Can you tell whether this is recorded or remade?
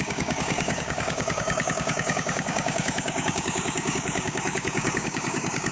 remade